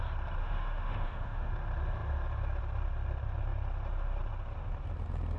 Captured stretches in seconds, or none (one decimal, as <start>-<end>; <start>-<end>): 0.0-0.4; 1.5-5.4